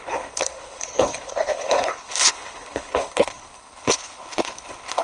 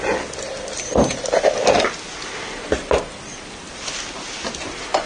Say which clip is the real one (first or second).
second